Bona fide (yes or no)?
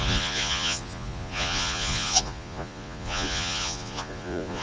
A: no